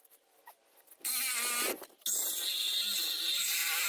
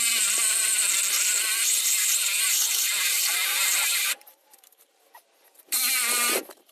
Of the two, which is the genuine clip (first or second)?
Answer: first